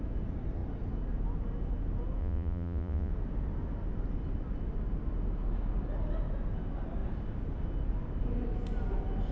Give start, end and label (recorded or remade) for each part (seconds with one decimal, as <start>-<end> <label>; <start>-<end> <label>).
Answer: 0.0-2.2 recorded; 2.2-3.1 remade; 3.1-9.3 recorded